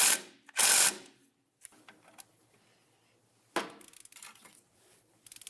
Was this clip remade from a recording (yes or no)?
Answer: no